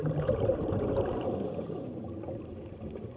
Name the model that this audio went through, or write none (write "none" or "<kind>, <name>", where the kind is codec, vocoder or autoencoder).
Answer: none